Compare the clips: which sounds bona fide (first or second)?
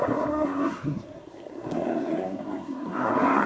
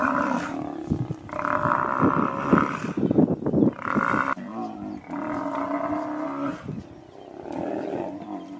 second